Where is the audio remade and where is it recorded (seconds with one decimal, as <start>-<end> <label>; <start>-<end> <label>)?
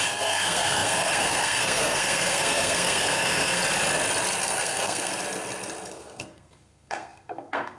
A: 0.0-3.6 remade; 3.6-4.4 recorded; 4.4-5.1 remade; 5.1-5.9 recorded; 5.9-7.8 remade